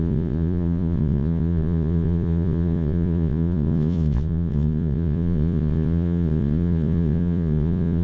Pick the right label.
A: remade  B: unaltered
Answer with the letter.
A